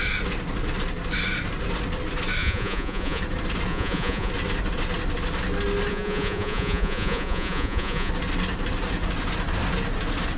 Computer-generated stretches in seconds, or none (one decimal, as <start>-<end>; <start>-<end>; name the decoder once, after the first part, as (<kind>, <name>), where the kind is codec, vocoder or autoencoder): 2.4-3.2 (vocoder, Vocos); 3.7-4.3; 5.9-8.1